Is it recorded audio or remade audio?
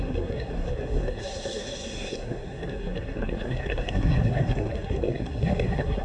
remade